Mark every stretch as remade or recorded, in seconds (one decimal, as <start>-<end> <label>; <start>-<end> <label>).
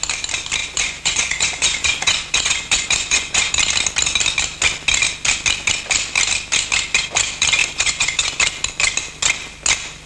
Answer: 0.0-0.6 recorded; 0.6-3.5 remade; 3.5-7.6 recorded; 7.6-8.4 remade; 8.4-10.1 recorded